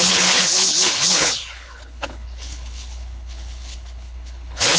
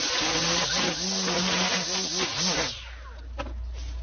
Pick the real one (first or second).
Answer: second